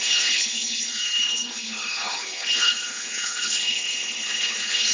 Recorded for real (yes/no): no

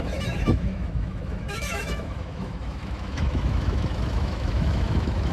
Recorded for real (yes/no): no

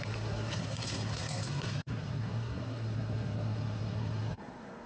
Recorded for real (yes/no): no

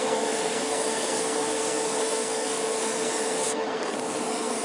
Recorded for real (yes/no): no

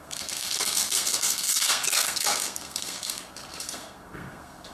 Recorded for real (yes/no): no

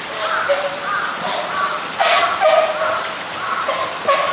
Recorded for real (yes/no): yes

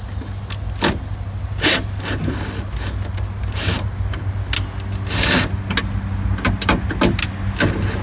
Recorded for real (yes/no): yes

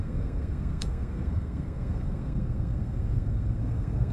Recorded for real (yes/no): no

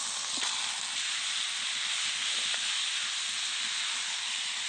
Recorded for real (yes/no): yes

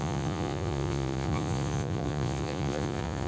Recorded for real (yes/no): no